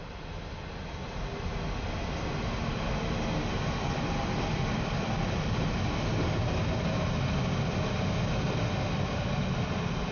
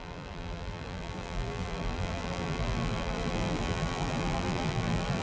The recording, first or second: first